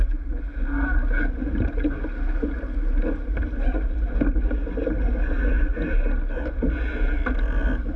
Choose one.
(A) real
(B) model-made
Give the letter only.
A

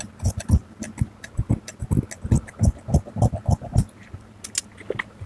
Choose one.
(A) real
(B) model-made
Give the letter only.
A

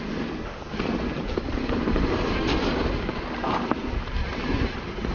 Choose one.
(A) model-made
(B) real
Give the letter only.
B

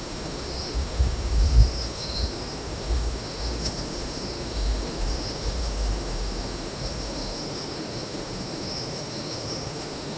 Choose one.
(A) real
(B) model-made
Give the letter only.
B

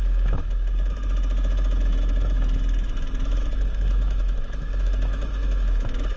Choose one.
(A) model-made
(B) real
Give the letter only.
A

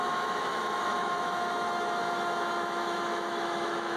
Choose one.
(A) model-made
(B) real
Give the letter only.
A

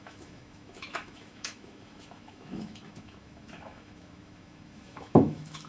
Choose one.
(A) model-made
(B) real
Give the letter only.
A